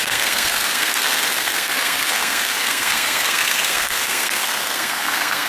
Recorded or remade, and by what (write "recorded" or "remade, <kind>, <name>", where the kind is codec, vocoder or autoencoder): remade, codec, SNAC